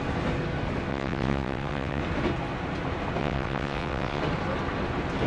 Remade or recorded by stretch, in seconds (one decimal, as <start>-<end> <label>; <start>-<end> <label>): 0.0-0.9 recorded; 0.9-2.0 remade; 2.0-3.2 recorded; 3.2-4.2 remade; 4.2-5.3 recorded